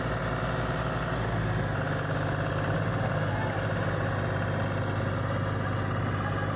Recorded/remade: recorded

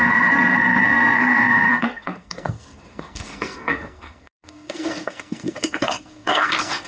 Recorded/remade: remade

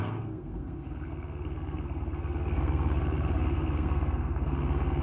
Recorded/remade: remade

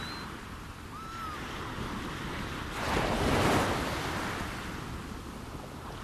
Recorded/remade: recorded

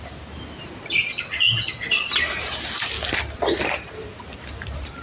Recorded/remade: recorded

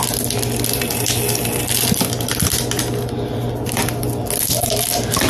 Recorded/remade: recorded